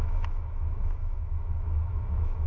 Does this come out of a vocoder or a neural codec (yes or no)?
yes